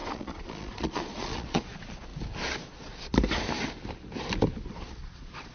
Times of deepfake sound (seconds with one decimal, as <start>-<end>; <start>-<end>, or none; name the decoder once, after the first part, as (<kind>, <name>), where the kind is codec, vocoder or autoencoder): 0.0-2.1 (vocoder, Vocos); 2.7-3.1; 4.7-5.5